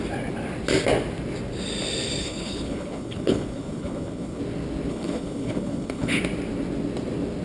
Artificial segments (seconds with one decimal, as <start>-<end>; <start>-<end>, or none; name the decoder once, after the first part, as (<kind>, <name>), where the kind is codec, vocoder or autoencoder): 2.2-4.4 (codec, HILCodec); 4.9-6.2